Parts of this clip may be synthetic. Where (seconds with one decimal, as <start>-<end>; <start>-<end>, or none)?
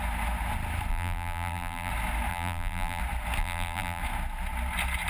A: 0.9-1.9; 2.3-3.0; 3.4-4.0